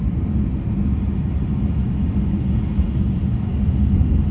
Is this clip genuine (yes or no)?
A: yes